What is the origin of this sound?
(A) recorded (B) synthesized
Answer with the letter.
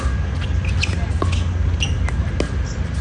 A